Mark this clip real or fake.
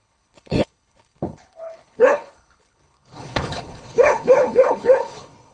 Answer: fake